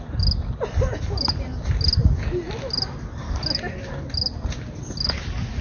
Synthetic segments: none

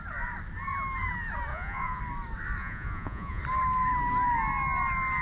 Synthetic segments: 1.5-2.0 (vocoder, Vocos); 2.6-3.4

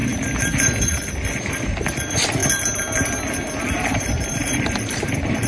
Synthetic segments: 0.0-2.4 (vocoder, BigVGAN v2); 3.6-5.5

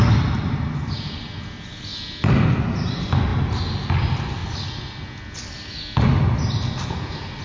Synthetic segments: none

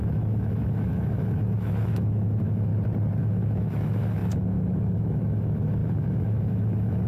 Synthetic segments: 0.0-2.7 (autoencoder, DAC-VAE); 3.2-7.1